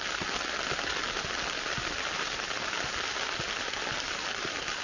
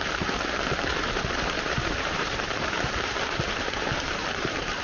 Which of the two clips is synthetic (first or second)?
second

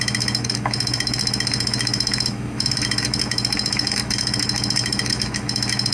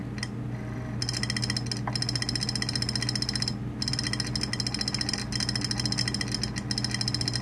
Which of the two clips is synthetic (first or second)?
first